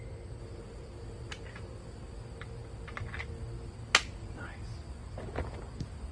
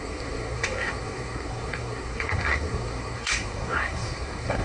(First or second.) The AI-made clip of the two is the second